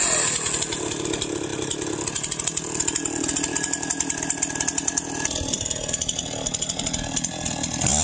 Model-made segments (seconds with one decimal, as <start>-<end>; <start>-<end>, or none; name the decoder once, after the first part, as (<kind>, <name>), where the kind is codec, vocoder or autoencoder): none